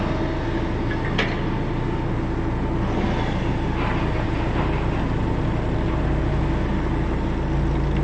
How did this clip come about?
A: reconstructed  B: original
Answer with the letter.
B